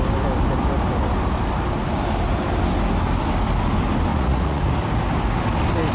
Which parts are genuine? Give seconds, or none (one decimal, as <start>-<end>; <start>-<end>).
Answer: 0.0-4.1; 4.7-5.9